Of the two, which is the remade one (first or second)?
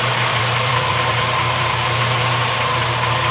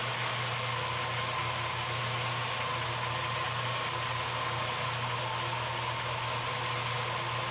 first